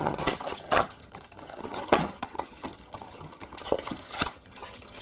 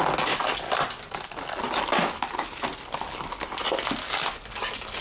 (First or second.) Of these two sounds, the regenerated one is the first